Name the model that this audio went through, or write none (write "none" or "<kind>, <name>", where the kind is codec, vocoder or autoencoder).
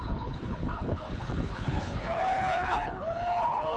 codec, HILCodec